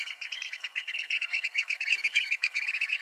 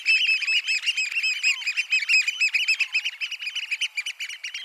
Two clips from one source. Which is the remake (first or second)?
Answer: first